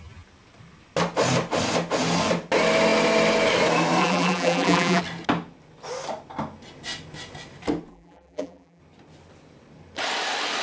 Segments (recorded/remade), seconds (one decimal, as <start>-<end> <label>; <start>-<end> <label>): 0.0-4.0 recorded; 4.0-5.0 remade; 5.0-7.9 recorded; 7.9-8.8 remade; 8.8-10.6 recorded